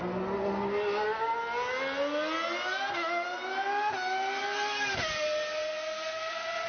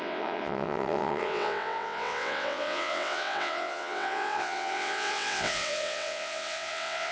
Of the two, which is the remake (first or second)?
second